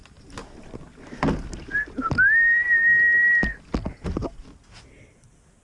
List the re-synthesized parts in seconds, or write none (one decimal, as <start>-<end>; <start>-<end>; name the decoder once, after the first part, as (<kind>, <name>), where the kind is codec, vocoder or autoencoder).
none

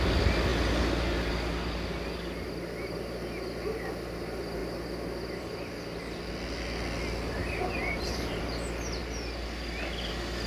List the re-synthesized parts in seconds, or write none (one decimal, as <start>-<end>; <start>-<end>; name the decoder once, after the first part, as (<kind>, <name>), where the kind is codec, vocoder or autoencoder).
7.4-8.4 (vocoder, BigVGAN v2)

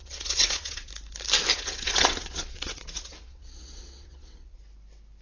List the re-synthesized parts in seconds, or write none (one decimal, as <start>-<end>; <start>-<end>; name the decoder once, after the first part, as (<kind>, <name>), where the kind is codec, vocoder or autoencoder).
0.0-0.9 (vocoder, WaveNeXt); 1.5-4.6

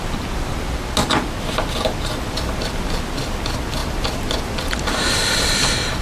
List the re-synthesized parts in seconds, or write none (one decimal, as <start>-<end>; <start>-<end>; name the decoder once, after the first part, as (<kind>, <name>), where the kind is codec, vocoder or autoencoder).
none